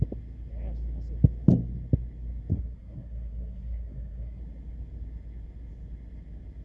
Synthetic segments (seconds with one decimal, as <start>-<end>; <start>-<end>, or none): 2.5-4.4